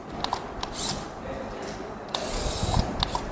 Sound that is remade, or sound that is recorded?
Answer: recorded